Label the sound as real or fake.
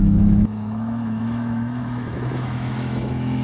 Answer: fake